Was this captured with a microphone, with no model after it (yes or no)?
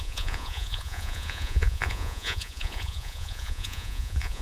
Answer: no